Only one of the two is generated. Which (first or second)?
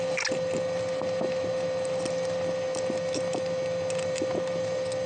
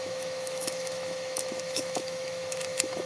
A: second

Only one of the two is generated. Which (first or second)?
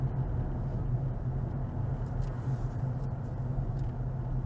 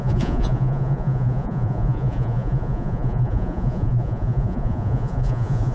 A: second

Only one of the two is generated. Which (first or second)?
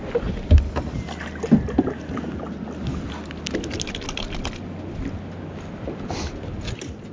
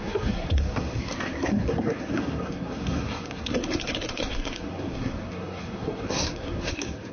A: second